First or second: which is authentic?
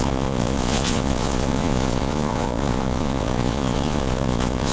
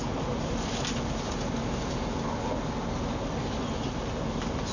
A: second